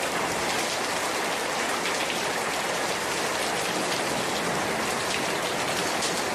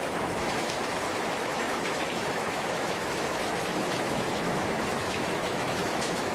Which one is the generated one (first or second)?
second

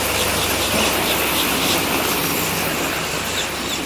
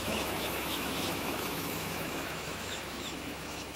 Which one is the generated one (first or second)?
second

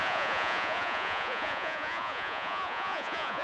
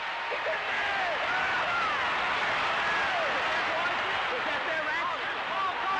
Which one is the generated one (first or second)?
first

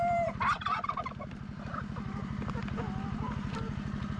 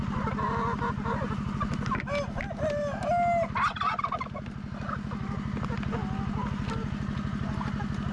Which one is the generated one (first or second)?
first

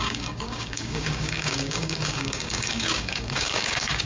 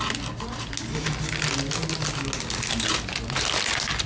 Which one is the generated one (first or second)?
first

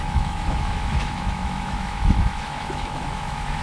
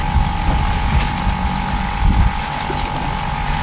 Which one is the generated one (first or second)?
first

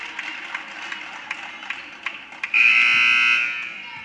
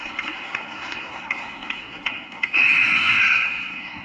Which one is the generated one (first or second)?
second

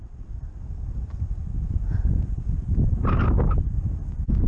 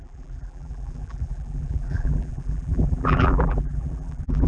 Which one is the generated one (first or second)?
second